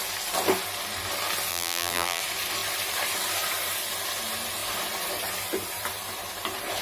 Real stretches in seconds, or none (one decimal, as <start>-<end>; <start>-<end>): 0.0-1.5; 2.2-6.8